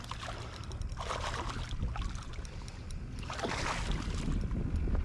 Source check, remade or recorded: recorded